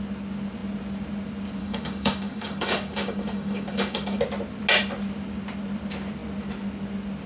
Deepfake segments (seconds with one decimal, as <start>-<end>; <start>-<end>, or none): 1.6-4.2